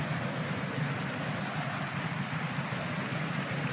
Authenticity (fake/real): real